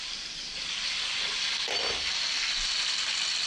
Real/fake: real